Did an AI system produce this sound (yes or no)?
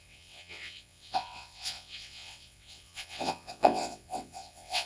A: yes